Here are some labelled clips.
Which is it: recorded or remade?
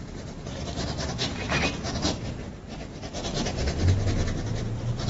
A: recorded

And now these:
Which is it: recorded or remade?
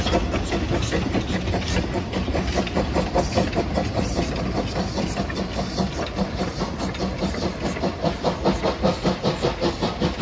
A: recorded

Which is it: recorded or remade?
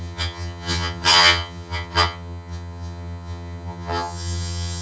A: remade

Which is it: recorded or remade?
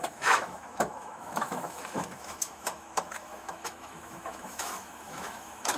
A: remade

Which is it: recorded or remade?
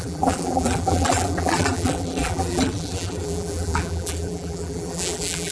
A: remade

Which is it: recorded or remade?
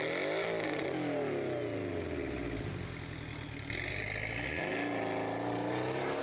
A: recorded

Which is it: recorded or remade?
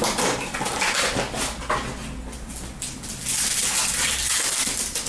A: recorded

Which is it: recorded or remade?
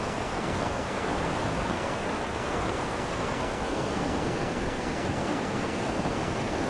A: remade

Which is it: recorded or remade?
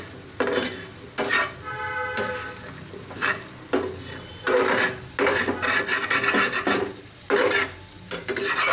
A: recorded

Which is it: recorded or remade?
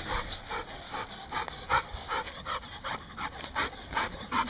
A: recorded